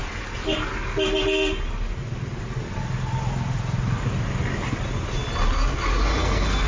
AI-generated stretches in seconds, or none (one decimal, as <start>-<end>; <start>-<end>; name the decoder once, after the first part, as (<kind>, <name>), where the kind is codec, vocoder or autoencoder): 6.2-6.7 (codec, SNAC)